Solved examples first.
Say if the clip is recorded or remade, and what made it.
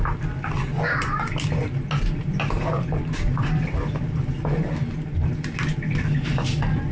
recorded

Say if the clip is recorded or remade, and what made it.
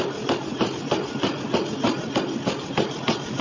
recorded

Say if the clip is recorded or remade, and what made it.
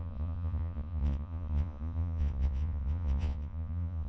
remade, vocoder, Vocos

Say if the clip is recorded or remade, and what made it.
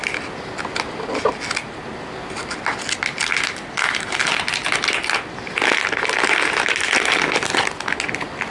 recorded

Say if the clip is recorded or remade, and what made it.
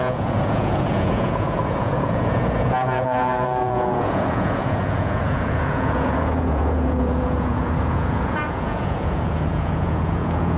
remade, vocoder, Vocos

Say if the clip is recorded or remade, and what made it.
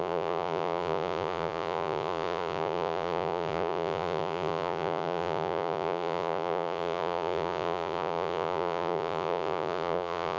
remade, vocoder, Vocos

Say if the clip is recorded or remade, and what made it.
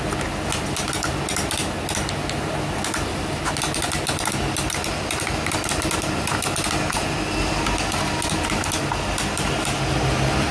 recorded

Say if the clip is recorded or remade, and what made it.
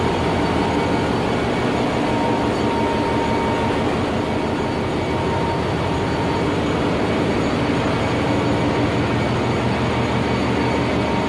recorded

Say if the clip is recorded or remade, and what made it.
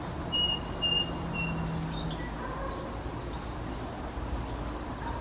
recorded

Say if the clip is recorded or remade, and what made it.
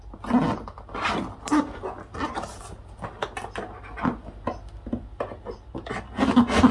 recorded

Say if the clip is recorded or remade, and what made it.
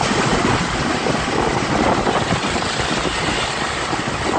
recorded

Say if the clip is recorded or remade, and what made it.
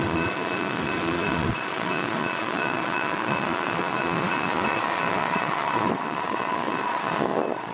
remade, vocoder, Vocos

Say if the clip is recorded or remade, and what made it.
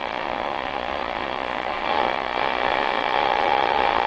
remade, vocoder, Vocos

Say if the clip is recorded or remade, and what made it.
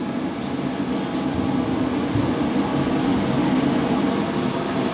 recorded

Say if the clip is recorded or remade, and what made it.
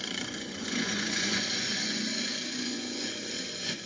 remade, vocoder, Vocos